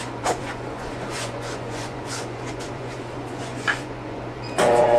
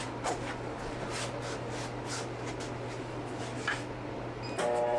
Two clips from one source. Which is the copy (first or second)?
first